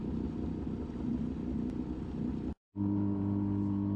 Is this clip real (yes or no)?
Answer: yes